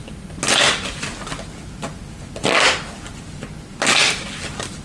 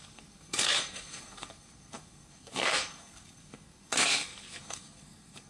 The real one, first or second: first